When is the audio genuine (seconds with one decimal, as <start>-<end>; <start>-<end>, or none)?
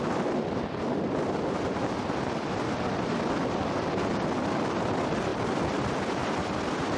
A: 0.0-5.3